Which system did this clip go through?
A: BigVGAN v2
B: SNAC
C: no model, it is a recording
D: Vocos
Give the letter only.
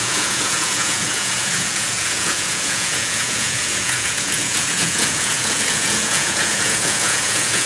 D